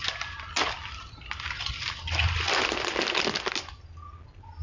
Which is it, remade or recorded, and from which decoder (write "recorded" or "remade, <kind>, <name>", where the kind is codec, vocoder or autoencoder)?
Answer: recorded